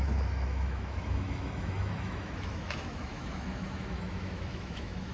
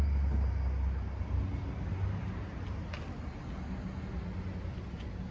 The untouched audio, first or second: second